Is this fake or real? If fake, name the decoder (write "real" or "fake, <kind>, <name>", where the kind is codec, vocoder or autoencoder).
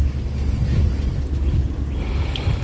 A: real